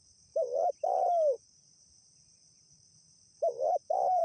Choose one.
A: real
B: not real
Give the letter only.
B